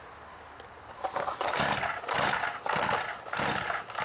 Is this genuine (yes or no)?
yes